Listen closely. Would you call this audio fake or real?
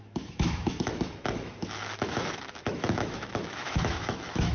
fake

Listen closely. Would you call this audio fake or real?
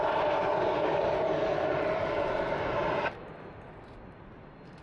real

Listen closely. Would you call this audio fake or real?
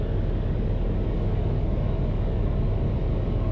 fake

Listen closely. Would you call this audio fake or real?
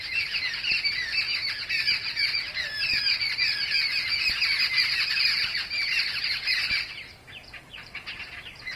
fake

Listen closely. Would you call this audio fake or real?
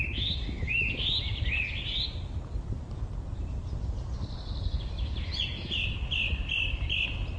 real